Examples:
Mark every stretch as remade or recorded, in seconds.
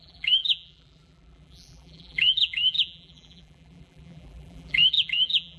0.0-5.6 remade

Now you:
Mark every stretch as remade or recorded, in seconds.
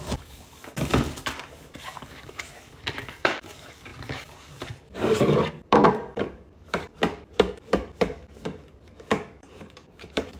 0.0-10.4 remade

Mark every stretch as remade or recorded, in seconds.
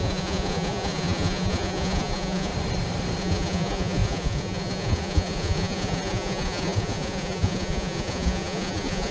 0.0-2.5 remade; 2.5-3.2 recorded; 3.2-9.1 remade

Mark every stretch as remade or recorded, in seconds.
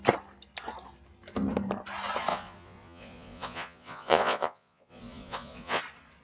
0.0-2.3 recorded; 2.3-5.8 remade; 5.8-6.2 recorded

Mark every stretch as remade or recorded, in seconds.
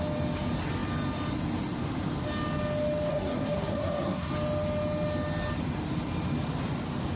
0.0-3.1 recorded; 3.1-4.3 remade; 4.3-7.2 recorded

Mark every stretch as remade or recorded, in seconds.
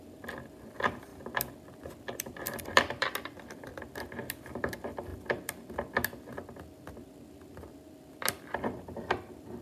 0.0-1.1 remade; 1.1-2.4 recorded; 2.4-3.7 remade; 3.7-4.4 recorded; 4.4-5.1 remade; 5.1-8.1 recorded; 8.1-9.6 remade